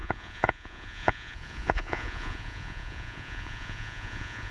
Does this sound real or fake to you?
fake